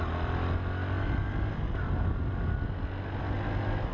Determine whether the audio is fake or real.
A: real